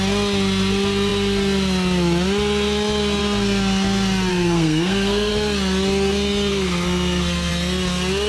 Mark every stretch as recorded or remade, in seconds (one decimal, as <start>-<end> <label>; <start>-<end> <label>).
0.0-4.3 recorded; 4.3-5.3 remade; 5.3-6.5 recorded; 6.5-7.5 remade; 7.5-8.3 recorded